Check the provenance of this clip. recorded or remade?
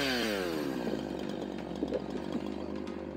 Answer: recorded